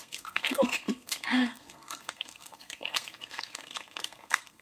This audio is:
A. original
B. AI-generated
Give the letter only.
B